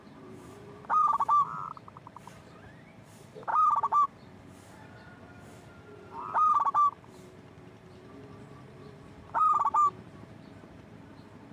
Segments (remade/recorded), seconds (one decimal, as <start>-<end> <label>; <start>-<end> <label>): 0.0-3.5 remade; 3.5-5.7 recorded; 5.7-11.5 remade